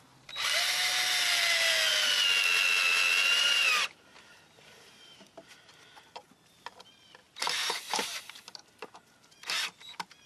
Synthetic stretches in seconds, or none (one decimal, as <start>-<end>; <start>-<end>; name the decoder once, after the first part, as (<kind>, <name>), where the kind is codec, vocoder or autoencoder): 3.3-5.6 (vocoder, BigVGAN v2); 7.2-8.2